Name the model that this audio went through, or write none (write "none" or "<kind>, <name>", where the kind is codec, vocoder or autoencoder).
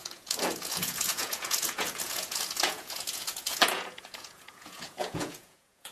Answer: vocoder, Vocos